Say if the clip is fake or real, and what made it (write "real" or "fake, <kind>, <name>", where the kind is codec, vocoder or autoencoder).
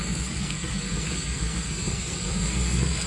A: fake, codec, SNAC